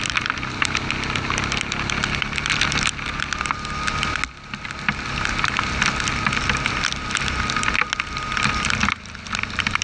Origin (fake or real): real